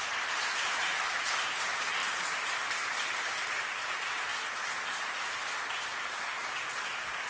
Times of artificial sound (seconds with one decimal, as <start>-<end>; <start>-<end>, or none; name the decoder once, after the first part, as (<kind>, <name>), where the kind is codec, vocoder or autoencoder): 0.0-2.0 (vocoder, BigVGAN v2); 3.9-4.3; 5.0-7.3